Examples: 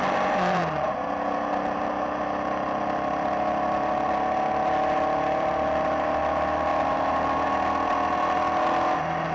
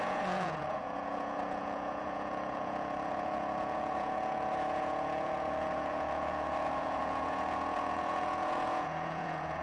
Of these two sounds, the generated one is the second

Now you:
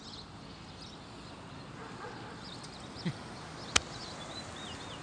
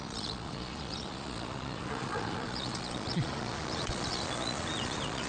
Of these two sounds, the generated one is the second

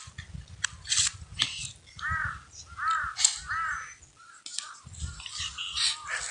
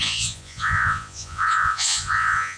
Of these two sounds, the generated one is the second